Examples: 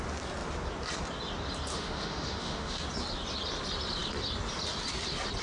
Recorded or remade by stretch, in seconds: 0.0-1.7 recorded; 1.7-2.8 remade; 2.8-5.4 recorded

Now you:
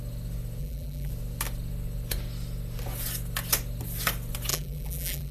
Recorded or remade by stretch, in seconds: 0.0-0.6 recorded; 0.6-1.1 remade; 1.1-4.5 recorded; 4.5-5.3 remade

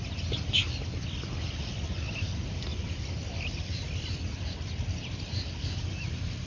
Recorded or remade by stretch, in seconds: 0.0-6.5 recorded

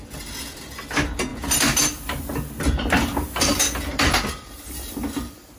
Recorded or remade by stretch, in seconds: 0.0-5.6 recorded

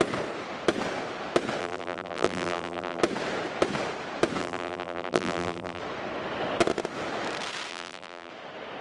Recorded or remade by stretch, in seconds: 0.0-1.6 recorded; 1.6-3.0 remade; 3.0-4.4 recorded; 4.4-5.8 remade; 5.8-7.7 recorded; 7.7-8.3 remade; 8.3-8.8 recorded

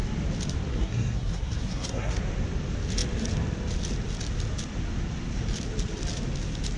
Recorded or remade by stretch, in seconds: 0.0-0.7 recorded; 0.7-2.2 remade; 2.2-6.8 recorded

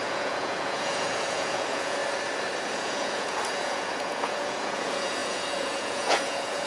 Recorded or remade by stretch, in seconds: 0.0-2.0 remade; 2.0-2.6 recorded; 2.6-6.7 remade

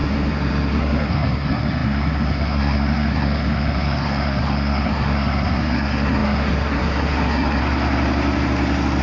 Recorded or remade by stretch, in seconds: 0.0-7.6 remade; 7.6-9.0 recorded